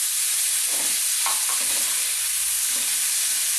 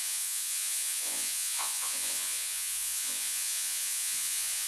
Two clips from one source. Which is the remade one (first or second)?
second